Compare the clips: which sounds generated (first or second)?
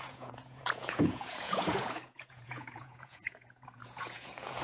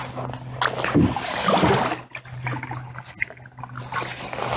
first